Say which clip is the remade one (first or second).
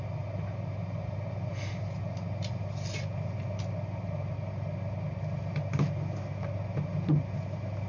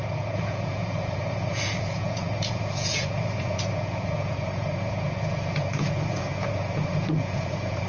second